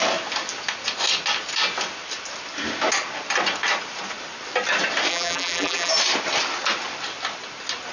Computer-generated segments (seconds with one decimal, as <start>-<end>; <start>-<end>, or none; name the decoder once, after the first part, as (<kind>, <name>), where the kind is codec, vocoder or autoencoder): 5.1-5.9 (vocoder, BigVGAN v2)

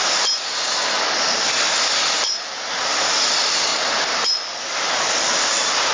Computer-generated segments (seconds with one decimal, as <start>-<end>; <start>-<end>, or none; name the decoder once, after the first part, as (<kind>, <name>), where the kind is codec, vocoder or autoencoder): 2.2-2.8 (vocoder, BigVGAN v2); 3.7-5.5